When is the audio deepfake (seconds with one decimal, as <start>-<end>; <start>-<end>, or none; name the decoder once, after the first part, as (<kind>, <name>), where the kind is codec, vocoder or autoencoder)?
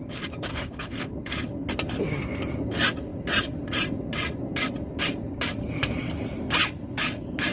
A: 0.5-1.1 (codec, SNAC)